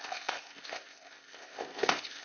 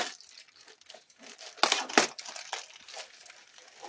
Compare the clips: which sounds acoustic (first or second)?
second